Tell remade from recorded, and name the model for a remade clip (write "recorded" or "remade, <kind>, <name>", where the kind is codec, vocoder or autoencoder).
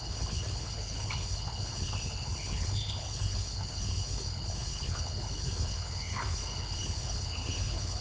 remade, codec, HILCodec